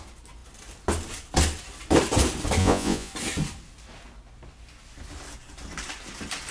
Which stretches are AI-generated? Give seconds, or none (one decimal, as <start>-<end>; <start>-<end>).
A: 2.6-3.1